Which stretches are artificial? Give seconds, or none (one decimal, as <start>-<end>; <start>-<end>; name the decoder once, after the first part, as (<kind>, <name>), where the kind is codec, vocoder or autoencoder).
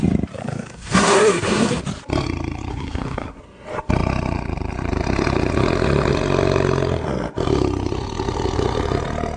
0.4-1.8 (codec, SNAC); 2.7-3.4